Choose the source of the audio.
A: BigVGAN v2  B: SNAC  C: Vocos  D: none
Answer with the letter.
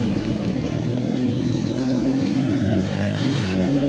B